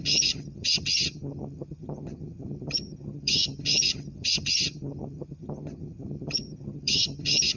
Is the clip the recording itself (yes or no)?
no